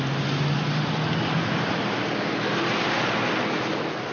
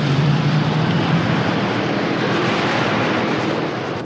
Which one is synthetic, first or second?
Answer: second